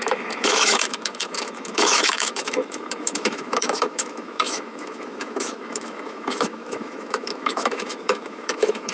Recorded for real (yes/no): no